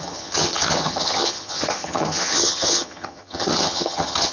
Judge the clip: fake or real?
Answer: fake